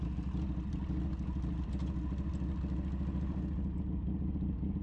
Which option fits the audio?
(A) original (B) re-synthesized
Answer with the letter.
A